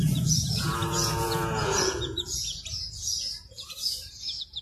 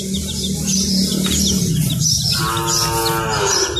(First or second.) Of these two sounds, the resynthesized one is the first